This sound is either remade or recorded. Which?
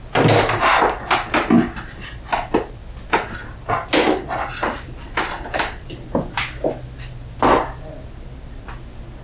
recorded